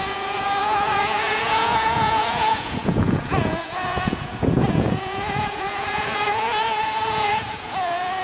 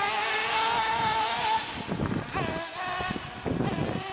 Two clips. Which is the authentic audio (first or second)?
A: second